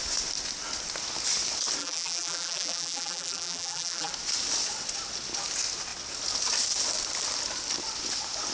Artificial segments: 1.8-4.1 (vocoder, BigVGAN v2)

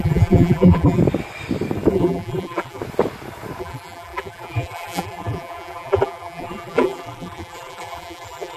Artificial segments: 0.0-1.0 (vocoder, BigVGAN v2); 1.9-2.8; 3.6-8.6

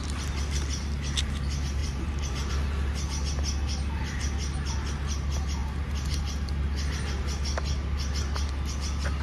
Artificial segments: 1.8-2.5 (vocoder, BigVGAN v2)

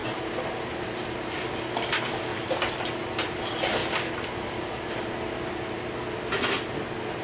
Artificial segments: 0.0-1.5 (vocoder, BigVGAN v2)

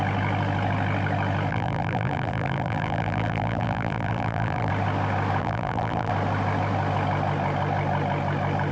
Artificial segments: 1.5-4.7 (vocoder, BigVGAN v2); 5.4-6.1

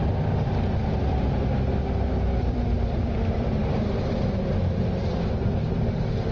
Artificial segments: 2.4-3.6 (vocoder, BigVGAN v2); 4.5-6.3

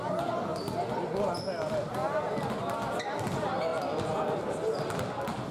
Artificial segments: none